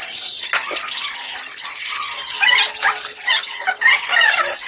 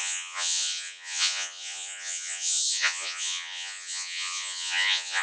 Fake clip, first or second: second